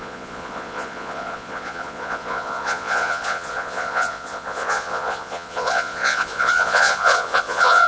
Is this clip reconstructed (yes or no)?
yes